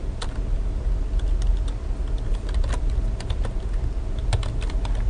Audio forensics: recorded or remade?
recorded